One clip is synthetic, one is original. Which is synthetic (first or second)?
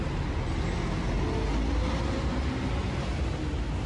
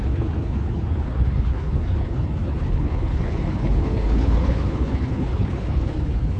second